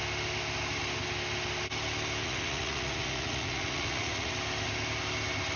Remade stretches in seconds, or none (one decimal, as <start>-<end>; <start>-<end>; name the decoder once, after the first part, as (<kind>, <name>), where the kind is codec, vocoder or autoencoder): 2.2-4.3 (vocoder, Vocos)